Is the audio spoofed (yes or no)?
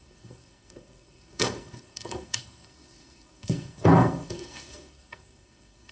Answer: yes